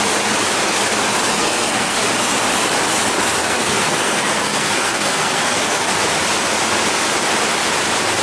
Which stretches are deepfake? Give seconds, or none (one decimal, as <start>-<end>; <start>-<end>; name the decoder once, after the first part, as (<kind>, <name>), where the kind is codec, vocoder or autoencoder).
1.3-2.0 (codec, SNAC); 3.4-6.0